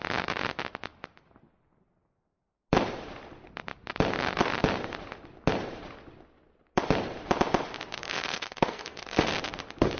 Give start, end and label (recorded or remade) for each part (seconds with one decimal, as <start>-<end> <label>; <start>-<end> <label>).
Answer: 0.0-8.0 recorded; 8.0-9.3 remade; 9.3-10.0 recorded